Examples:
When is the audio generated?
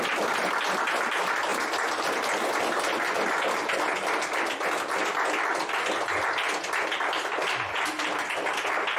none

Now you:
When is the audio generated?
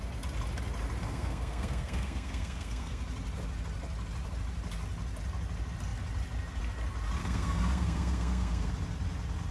1.0-3.0 (codec, SNAC); 7.2-8.7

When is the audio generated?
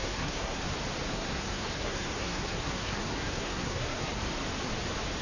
0.0-0.6 (codec, SNAC); 1.1-4.2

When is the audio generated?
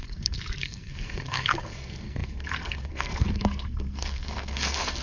0.0-5.0 (codec, SNAC)